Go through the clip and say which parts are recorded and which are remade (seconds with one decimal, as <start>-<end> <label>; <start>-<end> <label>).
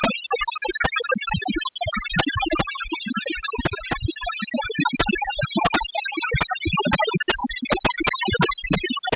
0.0-9.2 recorded